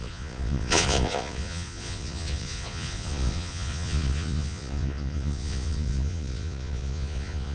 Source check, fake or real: fake